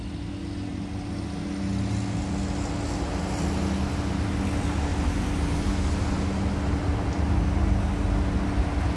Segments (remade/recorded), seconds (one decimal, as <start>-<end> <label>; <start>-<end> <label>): 0.0-9.0 recorded